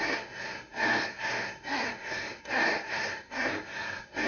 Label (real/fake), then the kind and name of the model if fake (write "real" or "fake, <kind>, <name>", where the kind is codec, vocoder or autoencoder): fake, codec, SNAC